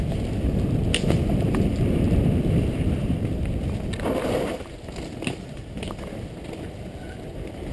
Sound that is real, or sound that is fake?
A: real